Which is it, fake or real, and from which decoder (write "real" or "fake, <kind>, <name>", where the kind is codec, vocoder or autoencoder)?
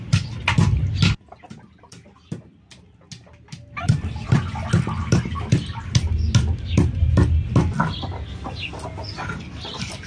real